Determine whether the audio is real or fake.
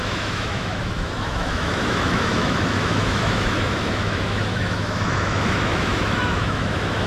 fake